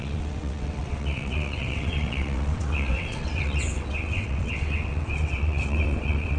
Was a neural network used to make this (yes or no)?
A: yes